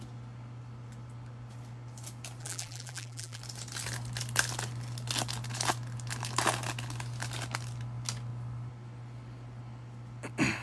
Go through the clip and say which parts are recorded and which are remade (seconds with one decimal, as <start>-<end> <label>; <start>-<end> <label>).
0.0-2.4 recorded; 2.4-3.4 remade; 3.4-10.6 recorded